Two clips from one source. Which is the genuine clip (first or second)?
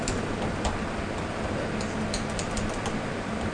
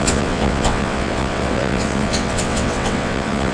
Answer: first